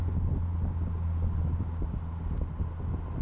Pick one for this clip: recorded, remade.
recorded